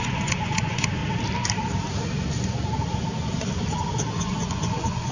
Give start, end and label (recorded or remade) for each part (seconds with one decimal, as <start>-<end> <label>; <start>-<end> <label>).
0.0-1.0 remade; 1.0-4.1 recorded; 4.1-5.1 remade